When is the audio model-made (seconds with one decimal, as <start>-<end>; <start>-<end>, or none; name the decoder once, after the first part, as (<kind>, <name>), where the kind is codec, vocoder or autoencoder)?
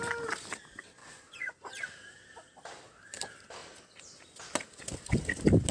1.0-1.5 (vocoder, Vocos)